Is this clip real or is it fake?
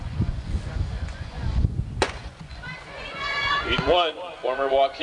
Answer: fake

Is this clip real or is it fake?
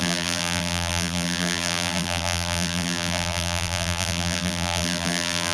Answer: fake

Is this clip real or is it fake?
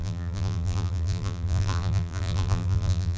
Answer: fake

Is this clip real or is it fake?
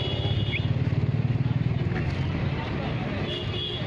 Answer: real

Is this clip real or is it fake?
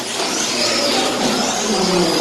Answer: real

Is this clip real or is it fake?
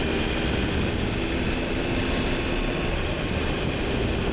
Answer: real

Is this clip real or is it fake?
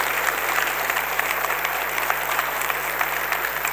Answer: fake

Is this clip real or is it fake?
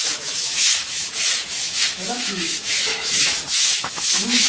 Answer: fake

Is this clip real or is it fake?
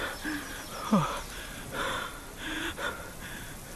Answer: real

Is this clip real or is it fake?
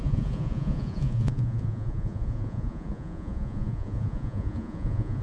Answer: fake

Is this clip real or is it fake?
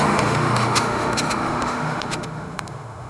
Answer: fake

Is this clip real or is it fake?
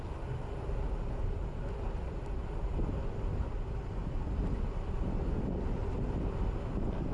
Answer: real